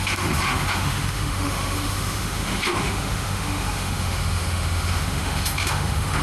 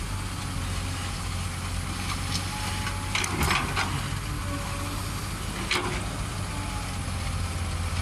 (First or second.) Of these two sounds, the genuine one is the second